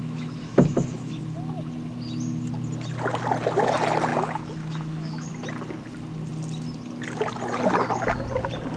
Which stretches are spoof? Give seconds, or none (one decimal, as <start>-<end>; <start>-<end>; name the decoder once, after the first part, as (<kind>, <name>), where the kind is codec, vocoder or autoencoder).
0.0-1.2 (autoencoder, DAC-VAE); 4.1-5.3